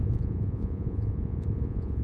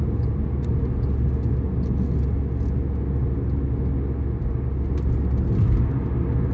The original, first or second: second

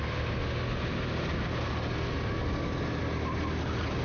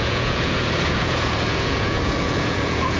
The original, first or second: first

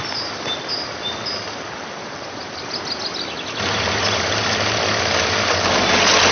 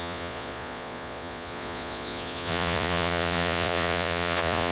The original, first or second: first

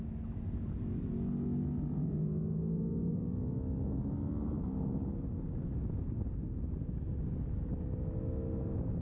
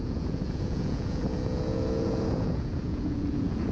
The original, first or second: first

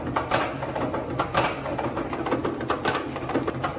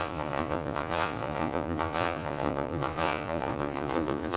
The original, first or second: first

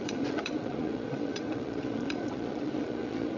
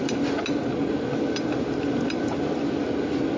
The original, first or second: second